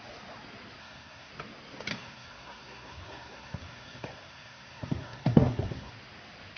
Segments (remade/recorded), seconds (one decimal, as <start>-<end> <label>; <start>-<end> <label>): 0.0-0.8 recorded; 0.8-1.3 remade; 1.3-1.9 recorded; 1.9-5.9 remade; 5.9-6.6 recorded